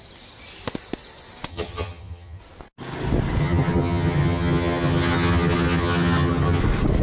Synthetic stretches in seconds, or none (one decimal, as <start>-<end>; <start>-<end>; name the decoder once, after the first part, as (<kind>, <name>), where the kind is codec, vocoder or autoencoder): 1.5-2.4 (vocoder, HiFi-GAN); 3.4-6.6